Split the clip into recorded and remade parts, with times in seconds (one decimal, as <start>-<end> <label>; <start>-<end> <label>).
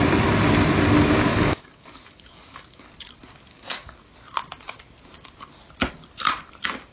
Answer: 0.0-1.3 recorded; 1.3-2.9 remade; 2.9-3.5 recorded; 3.5-4.1 remade; 4.1-6.9 recorded